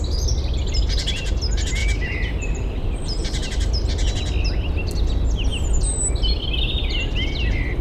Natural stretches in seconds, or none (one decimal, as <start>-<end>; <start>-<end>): 0.0-1.8; 3.7-7.8